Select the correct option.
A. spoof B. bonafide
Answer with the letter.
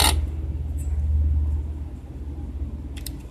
A